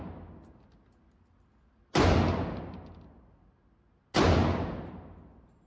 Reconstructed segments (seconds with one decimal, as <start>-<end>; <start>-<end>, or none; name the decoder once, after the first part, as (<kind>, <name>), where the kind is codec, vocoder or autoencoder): none